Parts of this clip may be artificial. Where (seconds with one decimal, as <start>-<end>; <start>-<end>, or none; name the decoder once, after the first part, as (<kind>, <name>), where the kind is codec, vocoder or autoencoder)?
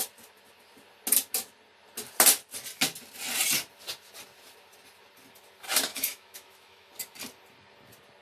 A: 5.9-6.9 (autoencoder, DAC-VAE)